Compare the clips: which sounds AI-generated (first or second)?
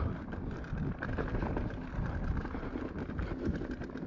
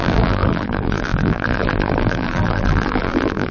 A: second